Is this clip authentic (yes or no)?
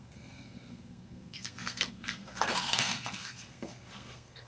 no